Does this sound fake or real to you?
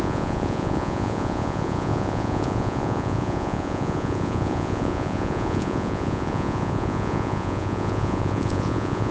fake